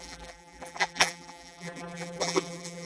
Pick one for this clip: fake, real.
fake